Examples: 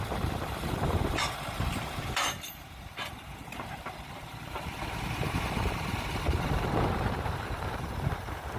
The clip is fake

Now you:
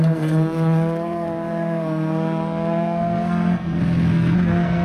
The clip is fake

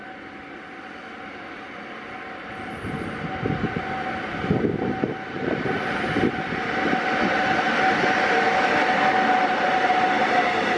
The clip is real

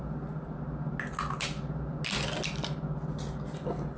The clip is real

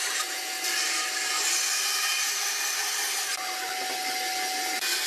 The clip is real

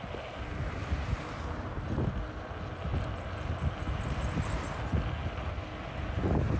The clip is real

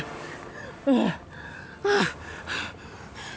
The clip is real